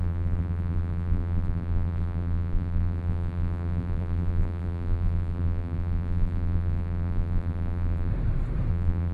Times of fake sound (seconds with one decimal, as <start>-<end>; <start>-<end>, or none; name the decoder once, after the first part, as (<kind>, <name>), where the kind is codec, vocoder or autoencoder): 0.0-8.1 (vocoder, BigVGAN v2); 8.7-9.1